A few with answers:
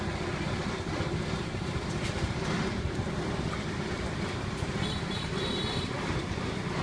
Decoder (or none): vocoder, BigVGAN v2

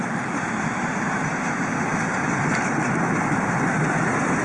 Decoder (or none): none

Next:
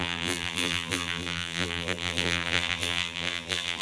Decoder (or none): vocoder, BigVGAN v2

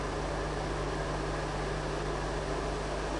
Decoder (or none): none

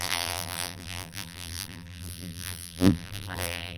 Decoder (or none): vocoder, BigVGAN v2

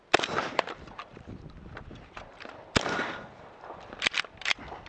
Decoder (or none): vocoder, BigVGAN v2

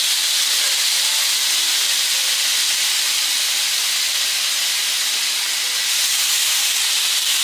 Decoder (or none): none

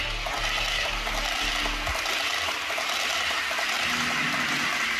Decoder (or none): none